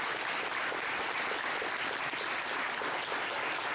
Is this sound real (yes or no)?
yes